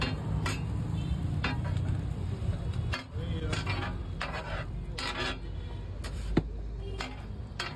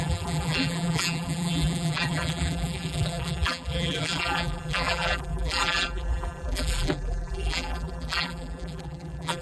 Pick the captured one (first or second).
first